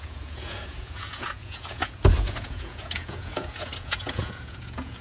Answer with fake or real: fake